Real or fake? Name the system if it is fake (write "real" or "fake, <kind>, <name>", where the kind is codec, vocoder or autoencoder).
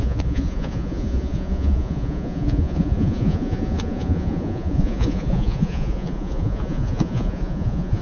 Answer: fake, vocoder, Vocos